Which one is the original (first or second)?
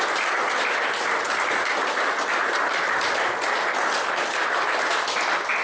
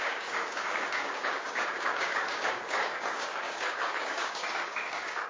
first